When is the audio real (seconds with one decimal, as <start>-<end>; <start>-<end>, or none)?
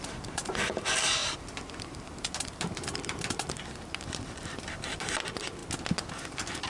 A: 1.2-2.2; 5.6-6.1